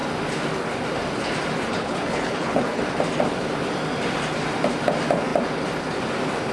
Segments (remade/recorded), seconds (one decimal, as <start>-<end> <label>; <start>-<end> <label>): 0.0-1.7 recorded; 1.7-2.8 remade; 2.8-6.5 recorded